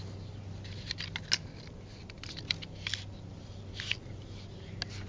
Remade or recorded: recorded